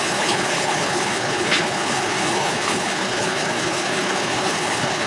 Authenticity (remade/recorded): remade